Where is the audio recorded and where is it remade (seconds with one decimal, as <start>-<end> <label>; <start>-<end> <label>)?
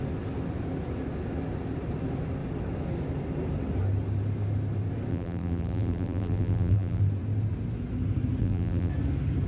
0.0-5.1 recorded; 5.1-7.0 remade; 7.0-8.4 recorded; 8.4-8.9 remade; 8.9-9.5 recorded